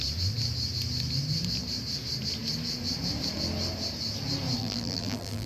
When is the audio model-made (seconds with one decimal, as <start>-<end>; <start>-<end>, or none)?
4.6-5.5